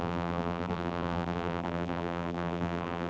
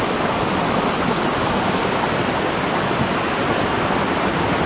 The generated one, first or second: first